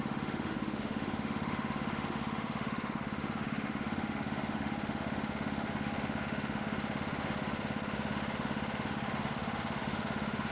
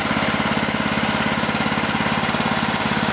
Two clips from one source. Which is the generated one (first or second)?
first